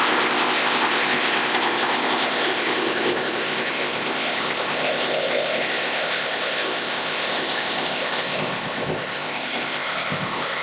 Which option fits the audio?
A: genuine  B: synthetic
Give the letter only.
B